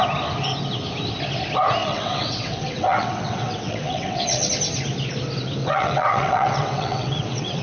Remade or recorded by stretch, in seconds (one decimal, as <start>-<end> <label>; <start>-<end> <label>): 0.0-1.8 recorded; 1.8-4.5 remade; 4.5-5.6 recorded; 5.6-7.6 remade